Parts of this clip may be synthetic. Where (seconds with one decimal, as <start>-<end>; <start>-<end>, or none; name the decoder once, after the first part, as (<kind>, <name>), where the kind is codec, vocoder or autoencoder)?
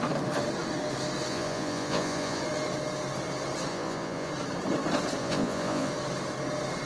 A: 1.3-2.4 (vocoder, Vocos); 3.7-4.3; 5.2-5.9